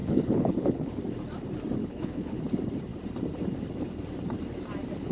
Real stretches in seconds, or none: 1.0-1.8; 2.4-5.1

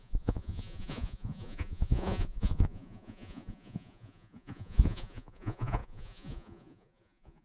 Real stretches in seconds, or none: none

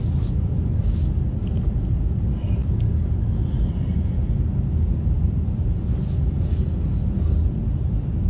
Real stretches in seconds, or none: 0.0-8.3

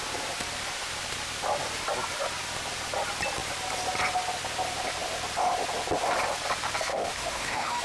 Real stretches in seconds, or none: 0.0-6.9

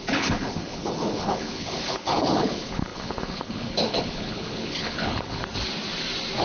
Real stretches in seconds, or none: 5.4-6.4

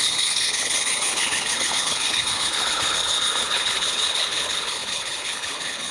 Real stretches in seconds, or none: none

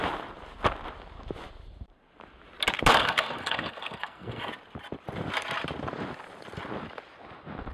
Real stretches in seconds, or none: 0.0-2.9; 4.5-7.7

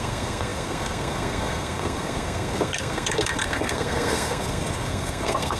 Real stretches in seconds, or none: none